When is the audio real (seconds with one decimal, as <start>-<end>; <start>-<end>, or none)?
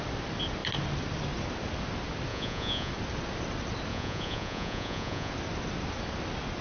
0.0-2.3; 2.9-3.9; 5.3-6.6